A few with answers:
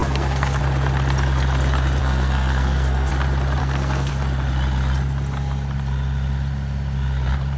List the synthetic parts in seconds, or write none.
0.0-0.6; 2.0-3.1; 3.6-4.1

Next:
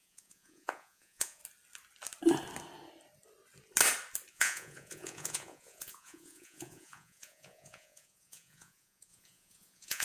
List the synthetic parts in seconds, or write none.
0.0-1.4; 4.3-10.0

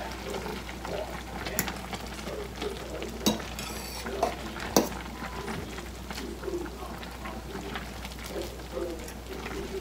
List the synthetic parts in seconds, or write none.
none